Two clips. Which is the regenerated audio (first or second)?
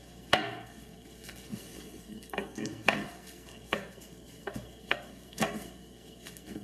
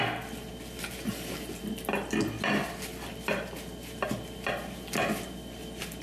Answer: first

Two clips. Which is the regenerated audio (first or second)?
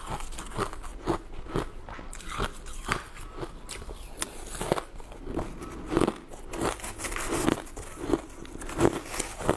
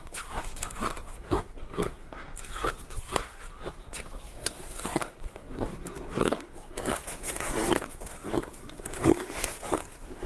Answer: second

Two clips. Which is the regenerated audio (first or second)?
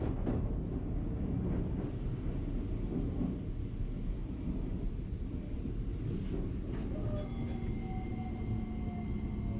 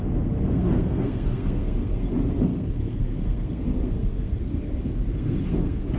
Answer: second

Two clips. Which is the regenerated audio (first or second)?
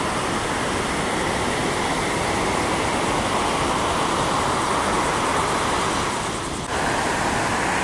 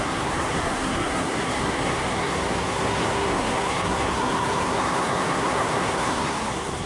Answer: second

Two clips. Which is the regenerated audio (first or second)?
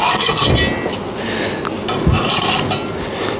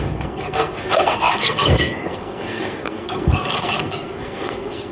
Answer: second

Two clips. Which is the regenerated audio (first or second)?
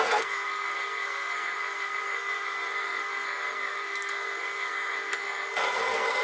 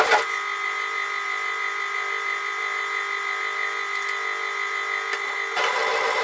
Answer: first